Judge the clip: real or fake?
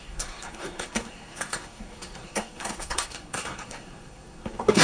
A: fake